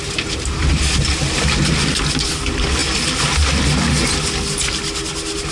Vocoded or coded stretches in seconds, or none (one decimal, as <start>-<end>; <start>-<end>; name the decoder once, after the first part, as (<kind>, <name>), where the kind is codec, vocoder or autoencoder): none